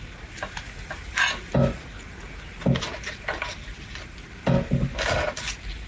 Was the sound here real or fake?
real